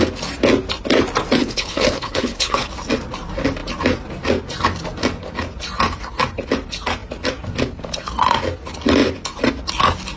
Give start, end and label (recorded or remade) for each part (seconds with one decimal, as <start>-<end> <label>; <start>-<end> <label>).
0.0-1.4 recorded; 1.4-2.7 remade; 2.7-10.2 recorded

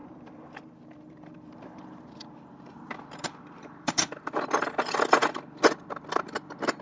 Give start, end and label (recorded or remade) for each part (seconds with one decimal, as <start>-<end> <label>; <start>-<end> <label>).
0.0-4.1 remade; 4.1-6.8 recorded

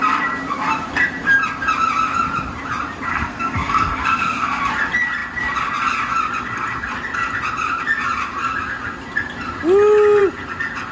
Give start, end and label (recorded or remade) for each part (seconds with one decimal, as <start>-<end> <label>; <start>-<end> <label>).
0.0-3.1 recorded; 3.1-4.6 remade; 4.6-10.9 recorded

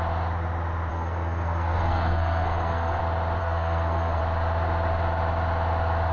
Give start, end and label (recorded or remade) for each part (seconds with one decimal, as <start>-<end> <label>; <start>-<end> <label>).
0.0-0.9 recorded; 0.9-3.0 remade; 3.0-3.4 recorded; 3.4-4.2 remade; 4.2-6.1 recorded

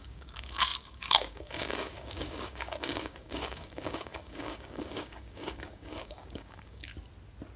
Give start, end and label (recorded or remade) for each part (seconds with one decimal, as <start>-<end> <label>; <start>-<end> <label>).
0.0-6.9 remade; 6.9-7.6 recorded

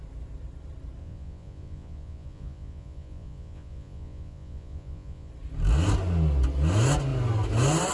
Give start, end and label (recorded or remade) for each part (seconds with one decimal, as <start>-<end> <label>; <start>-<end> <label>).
0.0-1.0 recorded; 1.0-5.3 remade; 5.3-7.9 recorded

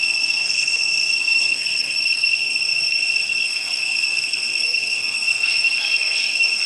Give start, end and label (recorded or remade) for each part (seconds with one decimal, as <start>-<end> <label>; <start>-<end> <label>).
0.0-6.7 remade